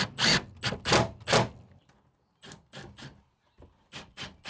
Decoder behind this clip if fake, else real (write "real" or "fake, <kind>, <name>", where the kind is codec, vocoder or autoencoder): real